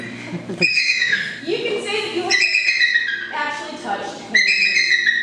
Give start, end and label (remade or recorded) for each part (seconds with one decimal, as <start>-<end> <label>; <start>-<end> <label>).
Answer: 0.0-0.7 recorded; 0.7-1.4 remade; 1.4-5.2 recorded